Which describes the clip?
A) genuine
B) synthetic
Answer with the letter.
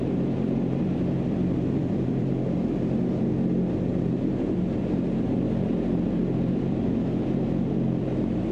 B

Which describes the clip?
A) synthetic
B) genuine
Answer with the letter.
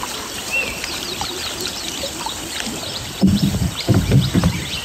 B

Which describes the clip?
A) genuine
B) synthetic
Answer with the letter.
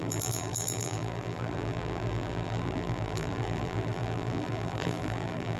B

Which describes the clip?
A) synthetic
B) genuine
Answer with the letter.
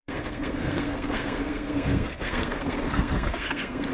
A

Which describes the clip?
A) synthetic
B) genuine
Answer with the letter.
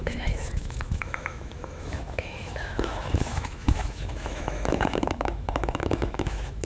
A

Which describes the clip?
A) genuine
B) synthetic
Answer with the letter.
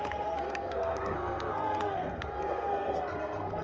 B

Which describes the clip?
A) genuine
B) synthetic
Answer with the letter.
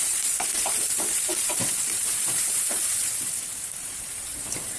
B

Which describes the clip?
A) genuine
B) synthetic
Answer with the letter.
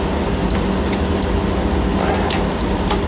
A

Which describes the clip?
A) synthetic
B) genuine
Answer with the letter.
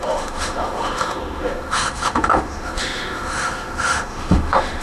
A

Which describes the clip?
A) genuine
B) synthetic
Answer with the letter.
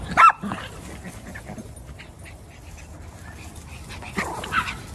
A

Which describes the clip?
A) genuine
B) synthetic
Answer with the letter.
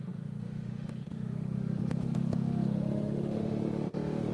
B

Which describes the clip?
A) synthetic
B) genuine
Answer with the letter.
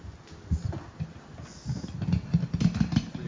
B